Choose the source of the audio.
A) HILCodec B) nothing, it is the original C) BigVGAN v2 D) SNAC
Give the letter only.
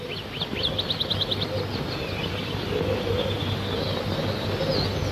B